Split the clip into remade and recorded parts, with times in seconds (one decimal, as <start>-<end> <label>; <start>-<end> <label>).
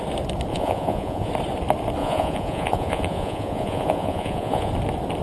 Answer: 0.0-0.5 recorded; 0.5-1.3 remade; 1.3-2.0 recorded; 2.0-4.7 remade; 4.7-5.2 recorded